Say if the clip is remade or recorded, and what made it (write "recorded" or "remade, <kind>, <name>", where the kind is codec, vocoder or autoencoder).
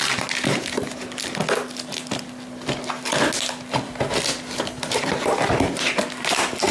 recorded